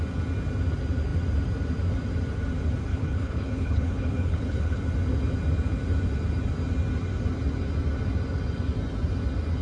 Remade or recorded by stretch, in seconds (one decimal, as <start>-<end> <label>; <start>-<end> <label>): 0.0-2.9 recorded; 2.9-4.8 remade; 4.8-9.6 recorded

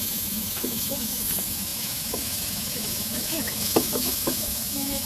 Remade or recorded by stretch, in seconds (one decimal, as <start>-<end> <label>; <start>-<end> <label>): 0.0-5.1 remade